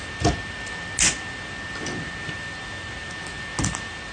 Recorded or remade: recorded